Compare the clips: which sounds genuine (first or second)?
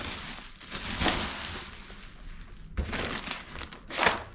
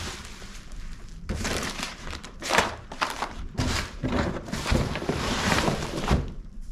first